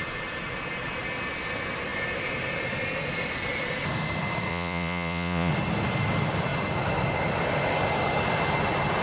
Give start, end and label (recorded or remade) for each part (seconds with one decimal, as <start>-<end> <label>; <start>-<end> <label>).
0.0-4.5 recorded; 4.5-5.5 remade; 5.5-9.0 recorded